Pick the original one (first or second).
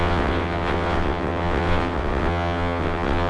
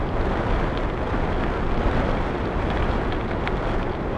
second